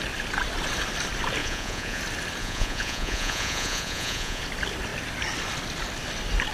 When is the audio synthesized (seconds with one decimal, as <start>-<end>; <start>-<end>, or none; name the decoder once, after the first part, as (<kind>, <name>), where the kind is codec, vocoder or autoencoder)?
1.4-2.0 (vocoder, Vocos); 2.4-4.4